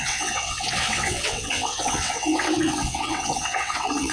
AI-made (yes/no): yes